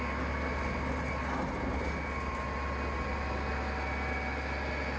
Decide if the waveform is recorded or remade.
recorded